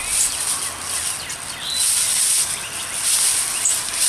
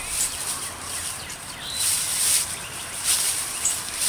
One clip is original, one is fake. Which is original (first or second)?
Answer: first